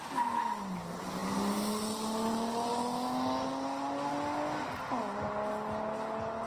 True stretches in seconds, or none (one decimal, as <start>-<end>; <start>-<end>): 0.0-6.5